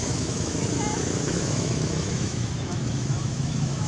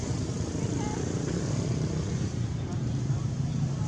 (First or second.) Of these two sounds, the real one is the second